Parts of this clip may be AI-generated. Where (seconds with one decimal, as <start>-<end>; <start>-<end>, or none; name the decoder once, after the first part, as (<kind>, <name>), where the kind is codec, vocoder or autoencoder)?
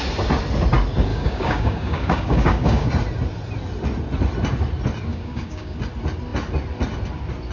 1.1-2.9 (codec, DAC); 5.1-5.8